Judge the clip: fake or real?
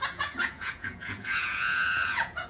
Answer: fake